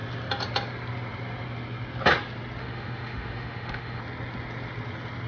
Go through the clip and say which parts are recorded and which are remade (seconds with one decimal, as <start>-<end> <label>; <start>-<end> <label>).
0.0-2.6 recorded; 2.6-4.0 remade; 4.0-5.3 recorded

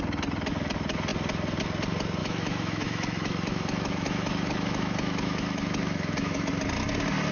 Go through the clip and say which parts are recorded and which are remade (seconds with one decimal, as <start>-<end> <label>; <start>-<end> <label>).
0.0-2.2 recorded; 2.2-6.5 remade; 6.5-7.3 recorded

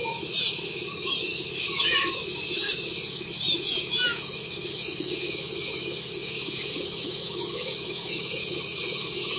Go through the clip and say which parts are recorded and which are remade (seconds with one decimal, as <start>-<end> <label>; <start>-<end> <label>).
0.0-9.4 remade

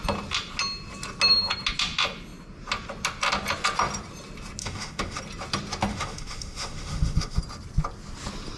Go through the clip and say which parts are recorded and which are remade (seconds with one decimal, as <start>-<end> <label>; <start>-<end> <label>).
0.0-4.6 recorded; 4.6-5.2 remade; 5.2-5.9 recorded; 5.9-7.4 remade; 7.4-8.6 recorded